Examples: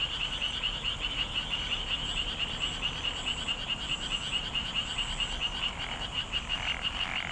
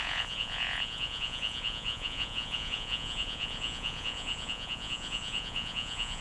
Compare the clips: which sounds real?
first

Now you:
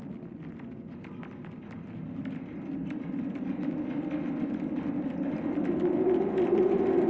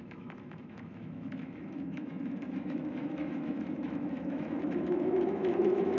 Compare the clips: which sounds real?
first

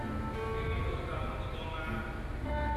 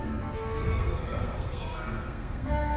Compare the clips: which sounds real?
first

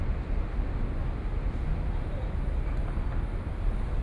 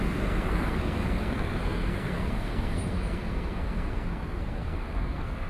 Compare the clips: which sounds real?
first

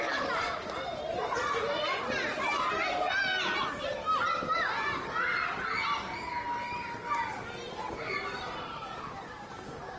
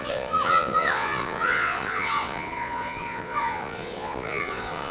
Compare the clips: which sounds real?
first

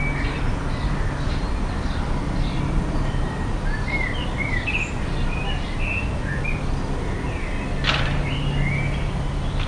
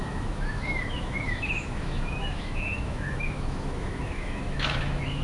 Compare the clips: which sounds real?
first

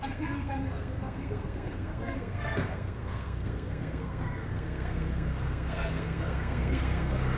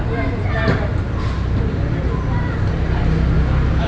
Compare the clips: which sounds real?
second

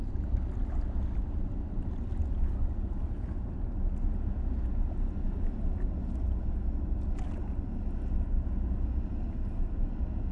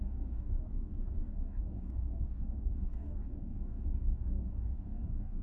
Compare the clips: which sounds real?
first